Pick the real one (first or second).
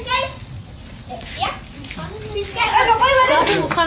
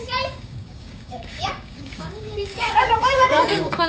first